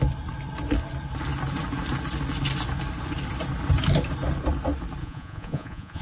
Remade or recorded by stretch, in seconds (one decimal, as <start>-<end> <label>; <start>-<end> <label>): 0.0-5.0 recorded; 5.0-6.0 remade